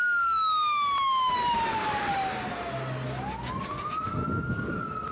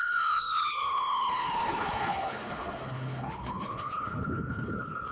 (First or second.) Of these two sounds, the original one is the first